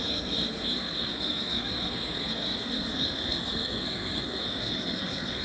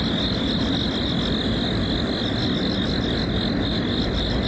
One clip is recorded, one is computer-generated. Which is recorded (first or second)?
second